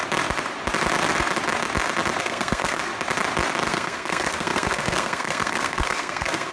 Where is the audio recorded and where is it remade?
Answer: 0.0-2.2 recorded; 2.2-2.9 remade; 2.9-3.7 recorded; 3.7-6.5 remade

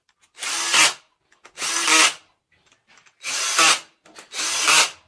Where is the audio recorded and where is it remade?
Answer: 0.0-5.1 recorded

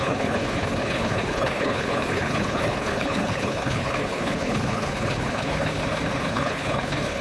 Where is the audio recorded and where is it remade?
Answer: 0.0-5.8 remade; 5.8-6.3 recorded; 6.3-7.2 remade

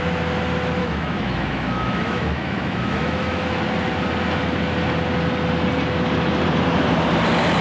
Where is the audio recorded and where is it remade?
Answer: 0.0-0.8 recorded; 0.8-3.6 remade; 3.6-7.6 recorded

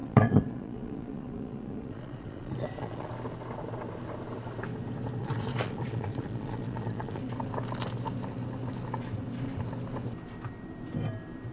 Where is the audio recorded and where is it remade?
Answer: 0.0-3.1 remade; 3.1-5.2 recorded; 5.2-7.2 remade; 7.2-11.5 recorded

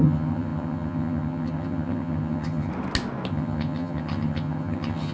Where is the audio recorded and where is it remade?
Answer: 0.0-2.7 remade; 2.7-3.3 recorded; 3.3-5.1 remade

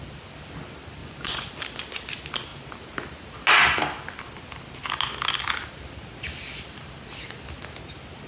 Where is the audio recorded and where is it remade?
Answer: 0.0-1.0 recorded; 1.0-1.5 remade; 1.5-8.3 recorded

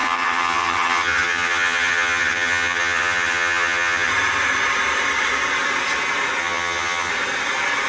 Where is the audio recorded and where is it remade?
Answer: 0.0-4.1 remade; 4.1-6.4 recorded; 6.4-7.1 remade; 7.1-7.9 recorded